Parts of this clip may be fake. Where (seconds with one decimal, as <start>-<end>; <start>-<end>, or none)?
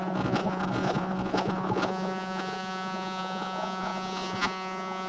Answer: 0.0-5.1